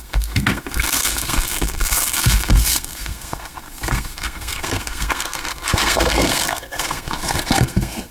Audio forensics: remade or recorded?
remade